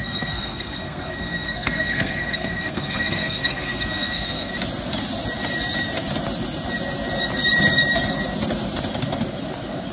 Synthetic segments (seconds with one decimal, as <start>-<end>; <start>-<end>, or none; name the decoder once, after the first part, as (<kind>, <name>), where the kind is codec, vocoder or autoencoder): 0.0-4.5 (codec, SNAC)